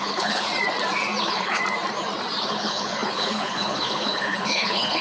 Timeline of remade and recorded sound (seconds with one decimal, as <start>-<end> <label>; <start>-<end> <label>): 0.0-0.5 remade; 0.5-1.2 recorded; 1.2-1.6 remade; 1.6-2.4 recorded; 2.4-5.0 remade